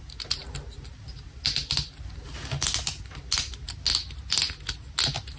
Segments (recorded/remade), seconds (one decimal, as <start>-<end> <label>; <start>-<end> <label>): 0.0-5.4 recorded